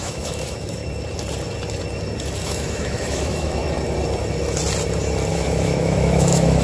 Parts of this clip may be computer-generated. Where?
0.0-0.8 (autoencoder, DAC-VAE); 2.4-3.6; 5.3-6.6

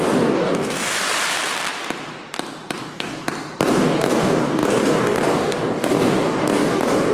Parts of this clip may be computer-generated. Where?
0.0-1.1 (codec, DAC); 2.8-3.2; 3.7-7.1

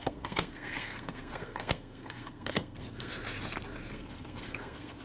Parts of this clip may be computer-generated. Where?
0.0-3.1 (codec, SNAC); 3.9-5.0